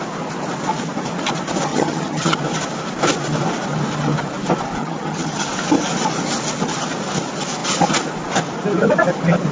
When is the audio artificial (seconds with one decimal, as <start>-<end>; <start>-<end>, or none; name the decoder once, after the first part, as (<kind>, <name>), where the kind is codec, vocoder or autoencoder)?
1.7-2.4 (vocoder, HiFi-GAN); 4.8-5.5